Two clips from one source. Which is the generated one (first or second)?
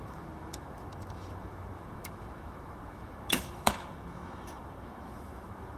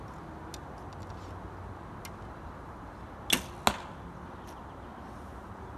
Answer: first